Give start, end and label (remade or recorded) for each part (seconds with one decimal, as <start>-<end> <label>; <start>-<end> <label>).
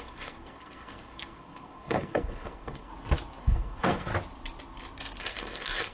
0.0-2.9 remade; 2.9-3.4 recorded; 3.4-4.1 remade; 4.1-5.2 recorded; 5.2-5.9 remade